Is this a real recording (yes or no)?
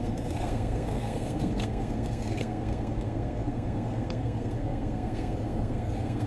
no